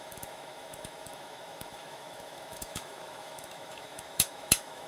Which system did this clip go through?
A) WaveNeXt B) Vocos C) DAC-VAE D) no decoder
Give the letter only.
C